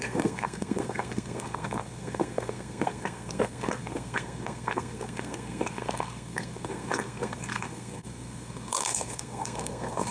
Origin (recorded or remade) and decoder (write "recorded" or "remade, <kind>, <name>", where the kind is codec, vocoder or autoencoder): remade, codec, SNAC